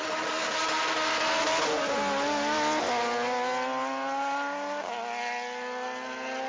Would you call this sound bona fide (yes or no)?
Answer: yes